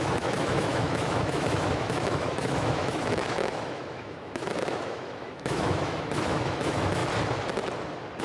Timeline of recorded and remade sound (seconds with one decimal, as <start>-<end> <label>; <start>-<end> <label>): 0.0-7.0 remade; 7.0-8.2 recorded